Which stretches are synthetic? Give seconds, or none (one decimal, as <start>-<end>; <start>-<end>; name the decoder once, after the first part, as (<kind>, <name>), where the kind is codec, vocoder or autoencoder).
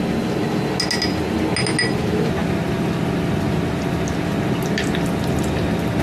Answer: none